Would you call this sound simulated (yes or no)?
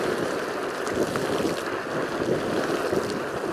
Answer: no